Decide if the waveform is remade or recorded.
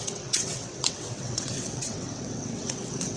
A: remade